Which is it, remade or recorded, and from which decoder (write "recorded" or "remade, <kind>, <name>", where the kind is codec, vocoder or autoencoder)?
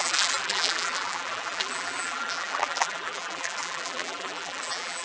remade, vocoder, BigVGAN v2